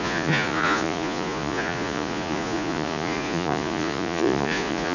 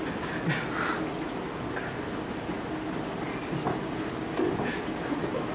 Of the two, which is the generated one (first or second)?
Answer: first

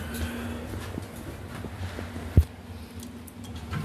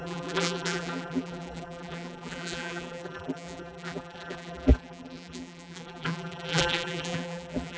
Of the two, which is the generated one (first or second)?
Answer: second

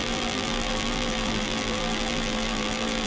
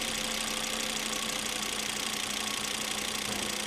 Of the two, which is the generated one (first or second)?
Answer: first